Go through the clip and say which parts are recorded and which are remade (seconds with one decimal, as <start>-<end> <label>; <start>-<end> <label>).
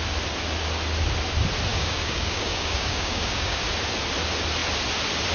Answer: 0.0-1.7 recorded; 1.7-3.6 remade; 3.6-5.3 recorded